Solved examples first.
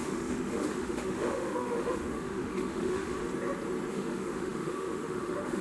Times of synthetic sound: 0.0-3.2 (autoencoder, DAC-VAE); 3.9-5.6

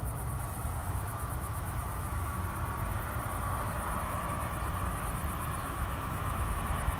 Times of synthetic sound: 0.8-2.4 (autoencoder, DAC-VAE); 5.6-6.6

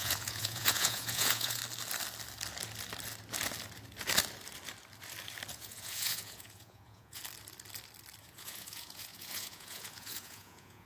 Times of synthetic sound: 0.0-1.6 (vocoder, Vocos); 5.5-7.2; 8.2-10.9

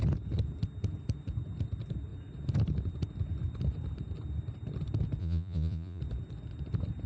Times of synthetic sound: 5.2-6.0 (vocoder, Vocos)

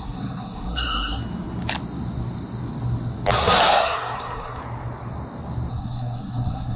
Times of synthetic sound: 0.0-1.2 (codec, SNAC); 3.3-4.6; 5.7-6.8

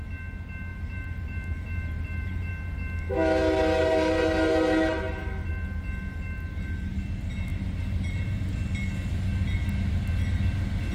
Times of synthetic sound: 0.7-2.5 (vocoder, BigVGAN v2); 3.8-5.5; 7.5-8.6